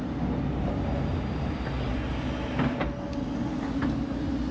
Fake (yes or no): no